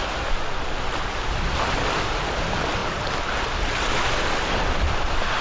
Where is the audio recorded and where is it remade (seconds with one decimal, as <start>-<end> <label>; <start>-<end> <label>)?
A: 0.0-5.4 recorded